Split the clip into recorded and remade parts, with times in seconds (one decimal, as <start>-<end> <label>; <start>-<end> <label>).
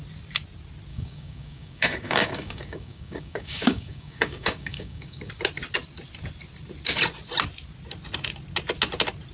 0.0-0.9 recorded; 0.9-5.3 remade; 5.3-9.3 recorded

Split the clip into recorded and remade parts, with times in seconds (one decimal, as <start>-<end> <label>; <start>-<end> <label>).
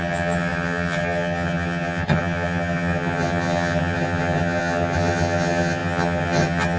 0.0-6.8 remade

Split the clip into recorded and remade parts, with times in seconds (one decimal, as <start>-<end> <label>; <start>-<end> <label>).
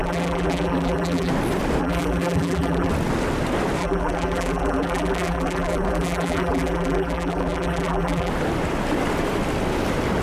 0.0-1.3 remade; 1.3-1.8 recorded; 1.8-2.9 remade; 2.9-3.8 recorded; 3.8-8.3 remade; 8.3-10.2 recorded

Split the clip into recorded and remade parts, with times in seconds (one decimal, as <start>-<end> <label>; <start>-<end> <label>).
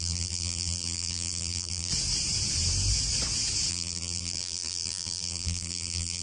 0.0-1.9 remade; 1.9-3.7 recorded; 3.7-6.2 remade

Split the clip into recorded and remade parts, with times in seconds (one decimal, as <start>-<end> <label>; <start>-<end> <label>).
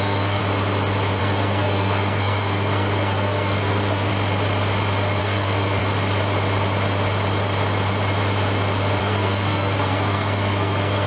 0.0-0.4 remade; 0.4-1.2 recorded; 1.2-4.1 remade; 4.1-5.2 recorded; 5.2-5.8 remade; 5.8-9.0 recorded; 9.0-11.1 remade